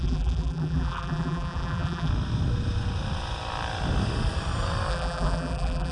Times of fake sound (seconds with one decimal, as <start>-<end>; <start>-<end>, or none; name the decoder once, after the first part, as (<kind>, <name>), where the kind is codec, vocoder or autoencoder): 0.0-2.1 (vocoder, BigVGAN v2); 4.9-5.9